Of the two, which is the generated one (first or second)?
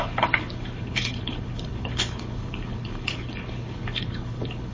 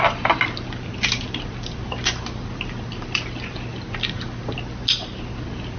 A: first